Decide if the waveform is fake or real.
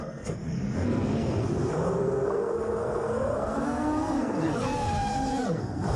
fake